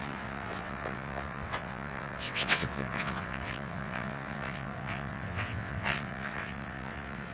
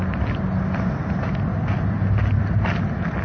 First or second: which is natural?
second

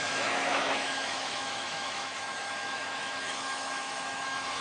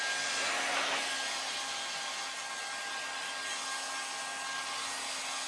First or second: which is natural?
second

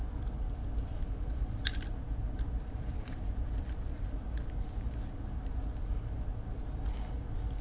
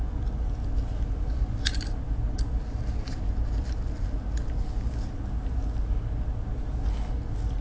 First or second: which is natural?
second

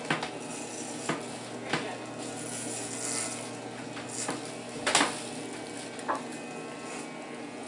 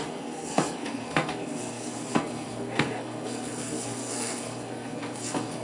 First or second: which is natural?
first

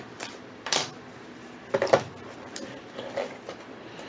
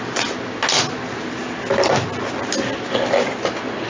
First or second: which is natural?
second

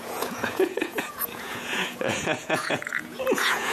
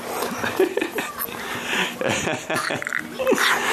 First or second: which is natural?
second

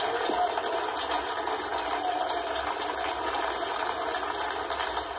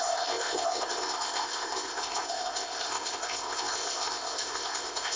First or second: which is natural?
first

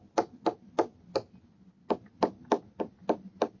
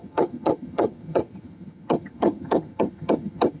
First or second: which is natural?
first